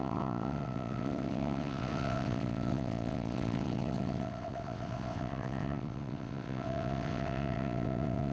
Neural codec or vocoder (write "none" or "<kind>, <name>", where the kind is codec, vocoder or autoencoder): vocoder, WaveNeXt